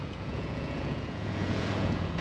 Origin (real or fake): fake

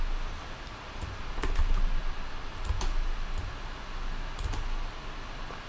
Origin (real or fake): real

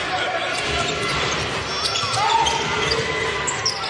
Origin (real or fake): real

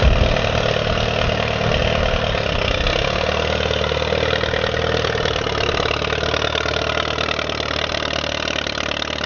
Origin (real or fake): real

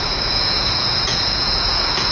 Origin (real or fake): fake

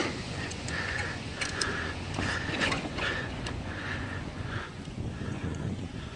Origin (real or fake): fake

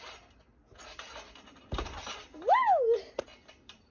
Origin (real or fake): real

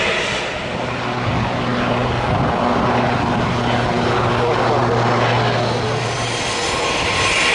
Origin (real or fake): real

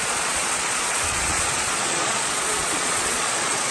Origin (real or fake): fake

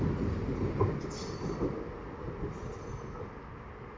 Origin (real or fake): real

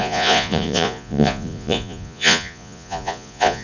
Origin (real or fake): fake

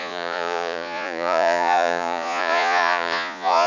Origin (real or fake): fake